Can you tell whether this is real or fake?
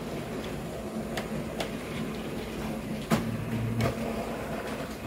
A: real